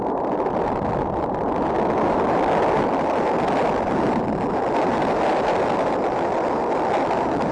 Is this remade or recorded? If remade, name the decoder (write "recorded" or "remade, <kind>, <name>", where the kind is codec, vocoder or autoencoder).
recorded